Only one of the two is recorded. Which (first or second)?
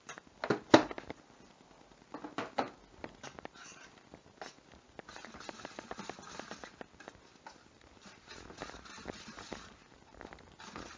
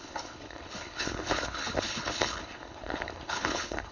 first